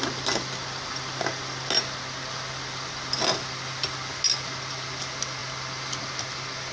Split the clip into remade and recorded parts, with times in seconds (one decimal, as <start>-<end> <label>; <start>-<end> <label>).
0.0-6.7 recorded